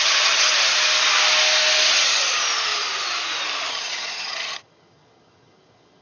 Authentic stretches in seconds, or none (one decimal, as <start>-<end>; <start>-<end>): 0.7-1.9; 2.4-3.7